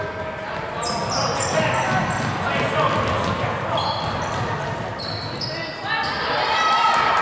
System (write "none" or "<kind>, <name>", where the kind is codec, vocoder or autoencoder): none